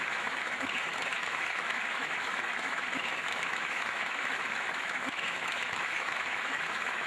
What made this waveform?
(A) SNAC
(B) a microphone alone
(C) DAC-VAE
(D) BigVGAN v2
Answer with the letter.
C